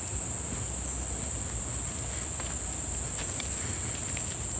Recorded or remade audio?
recorded